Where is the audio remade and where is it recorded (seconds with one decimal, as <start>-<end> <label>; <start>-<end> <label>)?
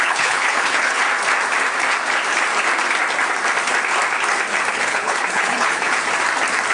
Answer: 0.0-1.0 remade; 1.0-4.7 recorded; 4.7-6.0 remade; 6.0-6.7 recorded